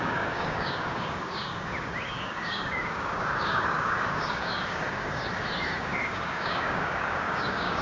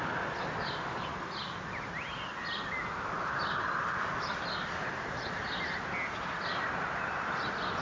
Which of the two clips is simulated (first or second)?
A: first